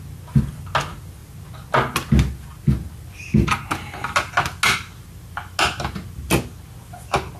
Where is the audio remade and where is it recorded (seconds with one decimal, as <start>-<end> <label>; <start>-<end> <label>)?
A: 0.0-7.4 recorded

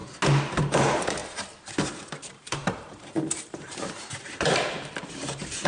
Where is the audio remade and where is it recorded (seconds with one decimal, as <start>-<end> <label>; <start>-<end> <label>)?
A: 0.0-0.6 recorded; 0.6-1.2 remade; 1.2-2.2 recorded; 2.2-5.7 remade

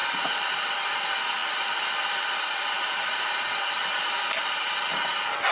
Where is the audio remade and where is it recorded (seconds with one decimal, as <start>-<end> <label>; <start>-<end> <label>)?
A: 0.0-5.5 recorded

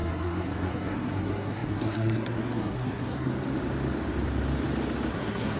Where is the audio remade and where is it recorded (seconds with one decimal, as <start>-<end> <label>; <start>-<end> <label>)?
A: 0.0-3.3 remade; 3.3-5.1 recorded; 5.1-5.6 remade